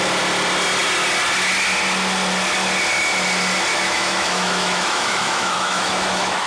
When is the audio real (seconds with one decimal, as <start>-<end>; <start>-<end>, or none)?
0.0-3.7